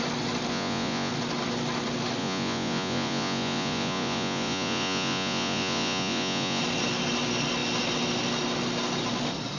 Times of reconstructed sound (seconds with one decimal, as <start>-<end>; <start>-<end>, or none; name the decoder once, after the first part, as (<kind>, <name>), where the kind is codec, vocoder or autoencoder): 0.5-1.1 (vocoder, Vocos); 2.2-6.6